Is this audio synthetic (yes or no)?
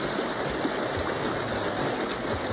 no